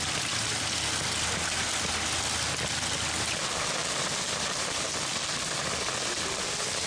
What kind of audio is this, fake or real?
real